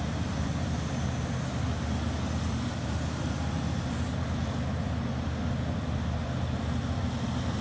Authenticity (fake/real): real